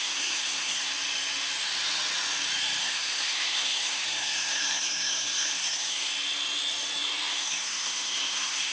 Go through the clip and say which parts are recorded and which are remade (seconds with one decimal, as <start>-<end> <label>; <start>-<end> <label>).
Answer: 0.0-0.9 remade; 0.9-2.8 recorded; 2.8-6.1 remade; 6.1-7.3 recorded; 7.3-8.7 remade